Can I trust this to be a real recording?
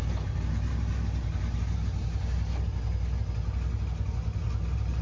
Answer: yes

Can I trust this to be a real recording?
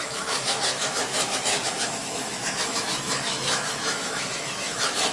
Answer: no